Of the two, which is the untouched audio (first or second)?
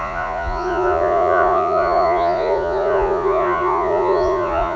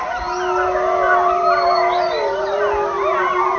second